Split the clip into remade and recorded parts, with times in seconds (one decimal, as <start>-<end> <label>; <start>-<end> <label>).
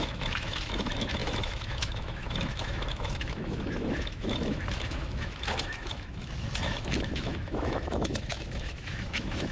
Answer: 0.0-9.5 remade